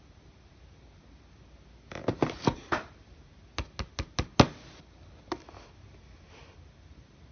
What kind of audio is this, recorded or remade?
recorded